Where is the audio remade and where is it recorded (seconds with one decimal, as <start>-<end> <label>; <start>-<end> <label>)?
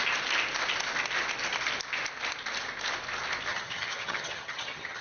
0.0-3.5 recorded; 3.5-5.0 remade